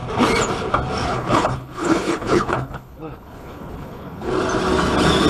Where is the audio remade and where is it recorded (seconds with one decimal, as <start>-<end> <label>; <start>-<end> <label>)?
0.0-1.1 recorded; 1.1-4.3 remade; 4.3-5.3 recorded